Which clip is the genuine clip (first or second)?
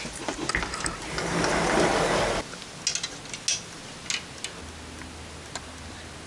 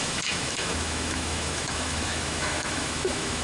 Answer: first